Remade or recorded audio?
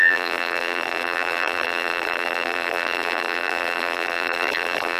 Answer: remade